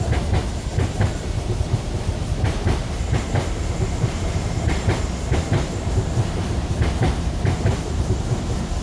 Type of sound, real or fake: fake